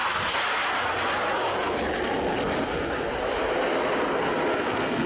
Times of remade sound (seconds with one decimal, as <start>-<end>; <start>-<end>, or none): none